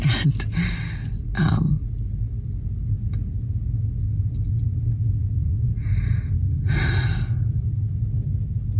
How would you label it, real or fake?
real